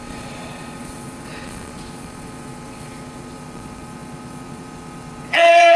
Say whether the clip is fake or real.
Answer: fake